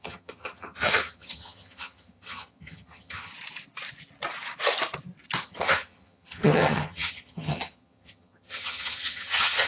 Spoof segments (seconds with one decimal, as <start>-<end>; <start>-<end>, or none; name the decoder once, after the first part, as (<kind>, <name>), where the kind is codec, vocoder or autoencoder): 0.0-3.3 (vocoder, HiFi-GAN); 5.4-9.7